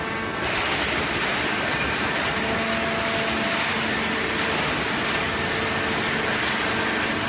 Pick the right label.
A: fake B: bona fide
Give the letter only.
B